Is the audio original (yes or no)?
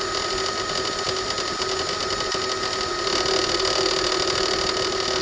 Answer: yes